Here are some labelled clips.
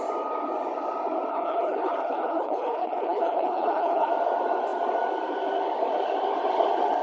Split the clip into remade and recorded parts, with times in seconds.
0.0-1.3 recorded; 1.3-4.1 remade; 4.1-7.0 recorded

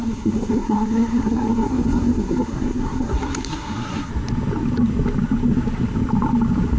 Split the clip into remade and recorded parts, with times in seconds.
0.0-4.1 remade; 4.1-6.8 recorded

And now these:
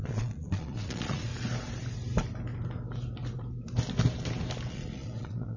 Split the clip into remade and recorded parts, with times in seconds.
0.0-1.3 remade; 1.3-4.7 recorded; 4.7-5.6 remade

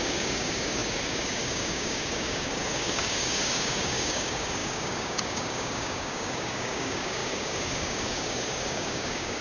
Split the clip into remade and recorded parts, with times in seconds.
0.0-9.4 remade

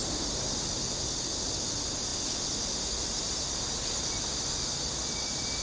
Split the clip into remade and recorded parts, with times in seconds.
0.0-5.6 recorded

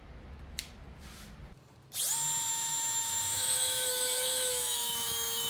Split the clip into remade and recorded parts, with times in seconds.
0.0-2.5 recorded; 2.5-5.5 remade

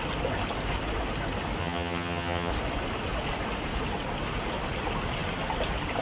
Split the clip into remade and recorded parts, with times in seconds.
0.0-1.6 recorded; 1.6-2.5 remade; 2.5-6.0 recorded

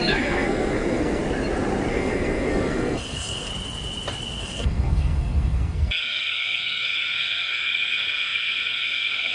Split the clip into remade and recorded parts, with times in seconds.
0.0-1.2 remade; 1.2-1.9 recorded; 1.9-3.5 remade; 3.5-4.4 recorded; 4.4-9.3 remade